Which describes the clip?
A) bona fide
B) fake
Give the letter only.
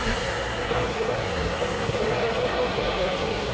B